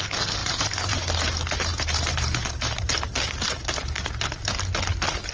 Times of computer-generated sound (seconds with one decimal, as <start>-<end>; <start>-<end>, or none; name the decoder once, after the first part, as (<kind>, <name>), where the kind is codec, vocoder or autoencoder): 0.4-1.0 (vocoder, BigVGAN v2); 1.7-4.1